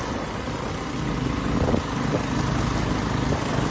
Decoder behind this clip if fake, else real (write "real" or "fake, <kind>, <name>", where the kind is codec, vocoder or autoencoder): real